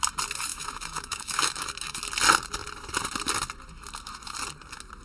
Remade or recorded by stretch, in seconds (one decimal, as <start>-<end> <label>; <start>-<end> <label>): 0.0-0.5 recorded; 0.5-2.0 remade; 2.0-5.0 recorded